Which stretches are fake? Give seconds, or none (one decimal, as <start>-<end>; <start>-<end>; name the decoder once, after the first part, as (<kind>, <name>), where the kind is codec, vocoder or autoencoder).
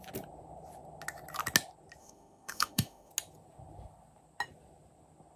2.0-3.1 (autoencoder, DAC-VAE)